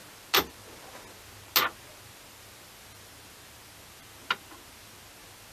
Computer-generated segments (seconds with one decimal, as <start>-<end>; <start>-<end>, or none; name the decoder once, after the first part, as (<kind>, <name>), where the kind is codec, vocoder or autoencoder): none